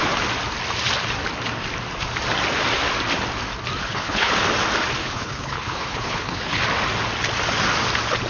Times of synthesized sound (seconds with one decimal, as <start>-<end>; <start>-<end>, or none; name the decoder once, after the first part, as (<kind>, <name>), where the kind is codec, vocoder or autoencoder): 3.8-4.3 (codec, HILCodec); 5.0-6.6